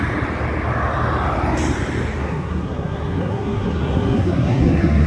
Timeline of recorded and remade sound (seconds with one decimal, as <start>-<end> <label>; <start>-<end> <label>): 0.0-2.2 recorded; 2.2-5.1 remade